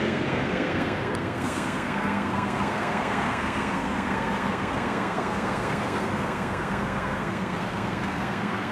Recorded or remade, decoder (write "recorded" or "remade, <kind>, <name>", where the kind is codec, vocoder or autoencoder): remade, codec, SNAC